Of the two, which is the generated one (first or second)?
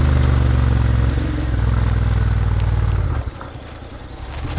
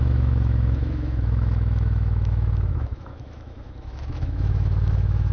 second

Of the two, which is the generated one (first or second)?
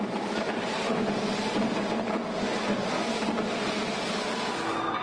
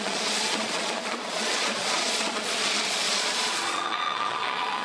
second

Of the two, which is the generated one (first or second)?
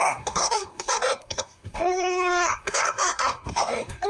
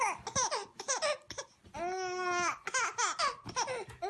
first